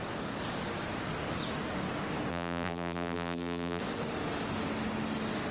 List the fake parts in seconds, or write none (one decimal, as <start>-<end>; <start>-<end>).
2.3-3.8